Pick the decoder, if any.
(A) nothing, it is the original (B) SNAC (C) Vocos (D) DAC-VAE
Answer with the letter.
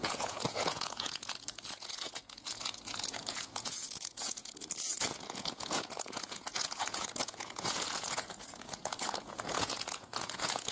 C